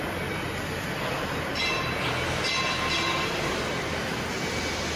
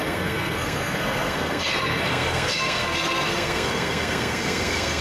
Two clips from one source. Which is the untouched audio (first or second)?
first